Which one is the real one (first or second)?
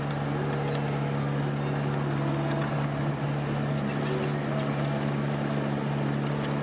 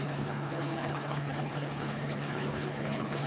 first